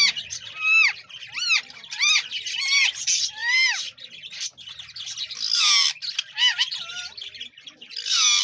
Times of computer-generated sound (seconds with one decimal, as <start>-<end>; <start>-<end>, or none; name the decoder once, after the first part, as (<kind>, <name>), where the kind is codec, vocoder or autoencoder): none

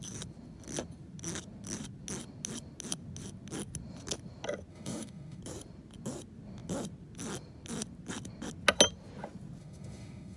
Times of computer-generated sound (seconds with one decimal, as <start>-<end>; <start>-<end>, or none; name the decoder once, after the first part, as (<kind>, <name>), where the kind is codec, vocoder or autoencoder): 4.7-5.4 (autoencoder, DAC-VAE); 9.6-10.4

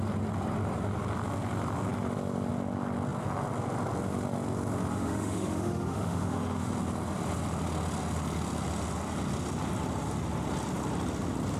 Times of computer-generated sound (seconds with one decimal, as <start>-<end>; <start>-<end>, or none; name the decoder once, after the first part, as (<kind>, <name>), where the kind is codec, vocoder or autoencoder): 4.9-6.7 (autoencoder, DAC-VAE)